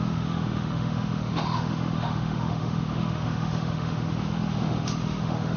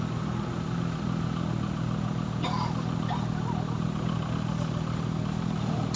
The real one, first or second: second